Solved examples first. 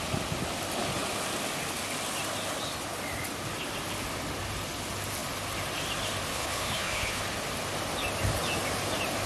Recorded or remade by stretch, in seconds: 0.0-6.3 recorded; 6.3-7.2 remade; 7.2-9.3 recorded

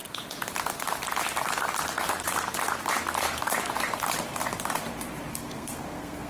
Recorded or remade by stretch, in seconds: 0.0-5.3 recorded; 5.3-6.3 remade

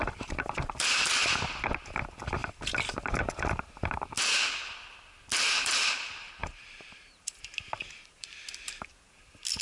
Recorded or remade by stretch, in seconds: 0.0-6.4 recorded; 6.4-8.4 remade; 8.4-9.6 recorded

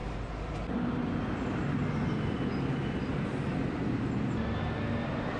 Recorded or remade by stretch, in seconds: 0.0-5.4 recorded

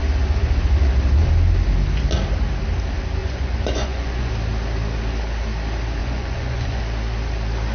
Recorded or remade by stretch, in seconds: 0.0-3.2 recorded; 3.2-4.3 remade; 4.3-6.0 recorded; 6.0-6.8 remade; 6.8-7.7 recorded

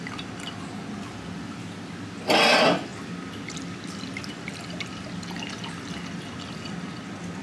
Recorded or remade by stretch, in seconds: 0.0-7.4 recorded

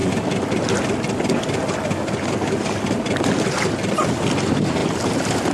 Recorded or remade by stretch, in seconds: 0.0-5.5 recorded

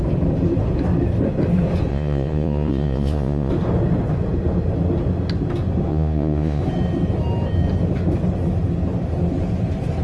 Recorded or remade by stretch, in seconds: 0.0-1.9 recorded; 1.9-3.5 remade; 3.5-5.9 recorded; 5.9-6.6 remade; 6.6-10.0 recorded